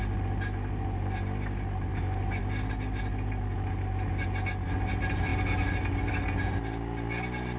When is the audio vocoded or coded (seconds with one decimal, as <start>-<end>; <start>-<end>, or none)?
none